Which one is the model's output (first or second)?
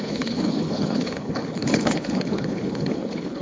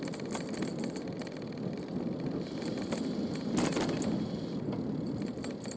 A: first